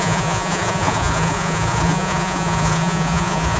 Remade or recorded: remade